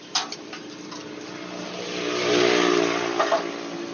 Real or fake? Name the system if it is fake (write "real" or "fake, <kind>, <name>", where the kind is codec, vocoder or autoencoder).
real